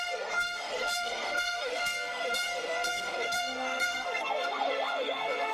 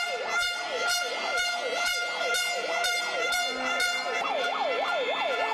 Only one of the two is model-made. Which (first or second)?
first